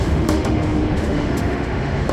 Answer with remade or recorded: remade